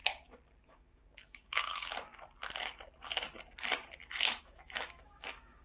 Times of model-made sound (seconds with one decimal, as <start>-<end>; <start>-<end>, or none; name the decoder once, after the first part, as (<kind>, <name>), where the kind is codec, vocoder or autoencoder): 0.6-2.1 (autoencoder, DAC-VAE); 4.4-5.6